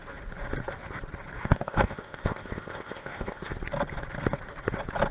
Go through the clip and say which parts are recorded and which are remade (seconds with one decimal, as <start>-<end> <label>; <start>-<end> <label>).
0.0-1.4 recorded; 1.4-3.5 remade; 3.5-5.1 recorded